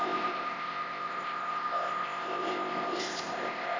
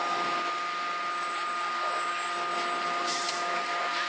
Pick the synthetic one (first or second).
first